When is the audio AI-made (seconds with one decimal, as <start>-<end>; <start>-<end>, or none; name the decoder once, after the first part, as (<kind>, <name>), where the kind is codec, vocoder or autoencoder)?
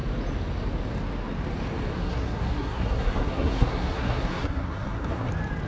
1.9-5.3 (codec, SNAC)